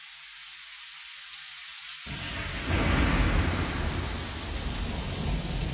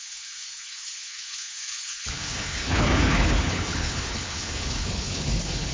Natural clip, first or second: first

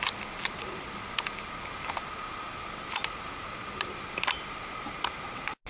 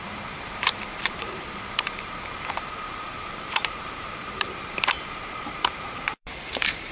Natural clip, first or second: first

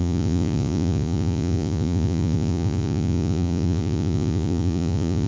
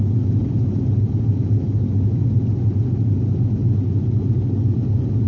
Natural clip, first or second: second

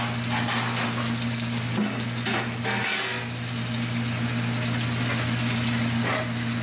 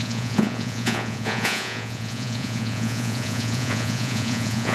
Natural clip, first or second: first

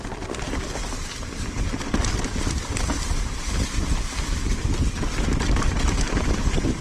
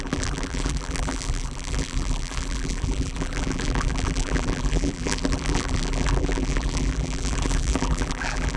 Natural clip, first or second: first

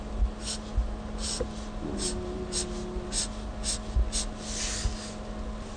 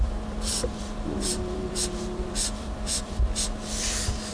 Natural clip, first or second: first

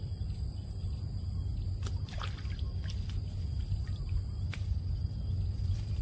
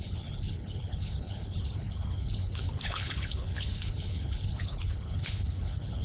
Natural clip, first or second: first